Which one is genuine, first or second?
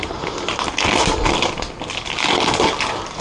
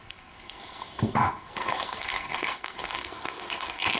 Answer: first